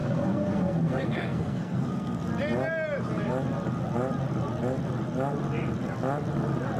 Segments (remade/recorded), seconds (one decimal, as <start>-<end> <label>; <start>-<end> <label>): 0.0-2.2 remade; 2.2-6.8 recorded